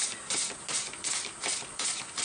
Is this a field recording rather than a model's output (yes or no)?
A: yes